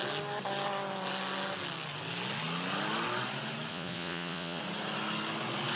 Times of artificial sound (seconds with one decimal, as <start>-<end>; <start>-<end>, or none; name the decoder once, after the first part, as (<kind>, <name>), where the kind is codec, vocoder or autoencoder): 3.7-4.6 (vocoder, Vocos)